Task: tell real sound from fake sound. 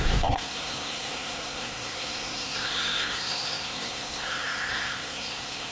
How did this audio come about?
fake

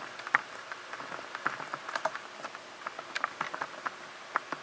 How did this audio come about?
real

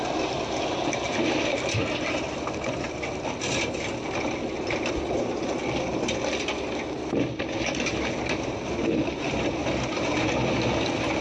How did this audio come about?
real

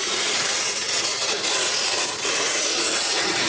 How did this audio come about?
fake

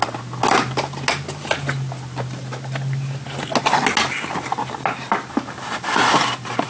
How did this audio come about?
real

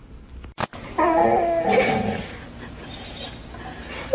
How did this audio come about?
real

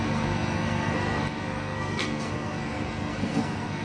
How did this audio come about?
fake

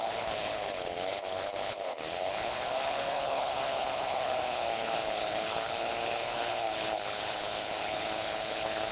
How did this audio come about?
fake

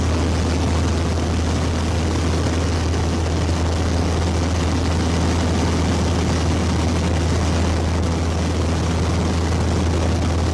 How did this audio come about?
real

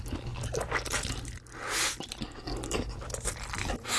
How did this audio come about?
real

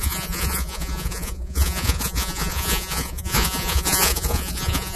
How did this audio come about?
fake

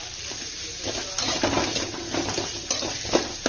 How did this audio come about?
real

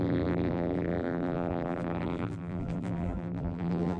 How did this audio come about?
fake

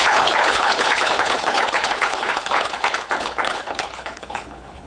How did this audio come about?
fake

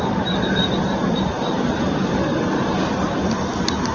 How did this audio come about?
real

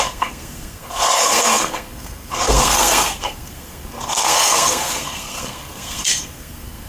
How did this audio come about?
fake